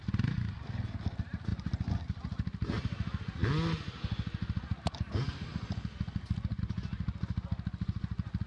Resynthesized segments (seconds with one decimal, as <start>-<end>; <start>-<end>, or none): none